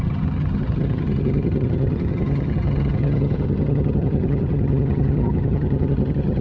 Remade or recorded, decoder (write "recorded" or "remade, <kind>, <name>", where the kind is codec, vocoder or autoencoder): remade, vocoder, HiFi-GAN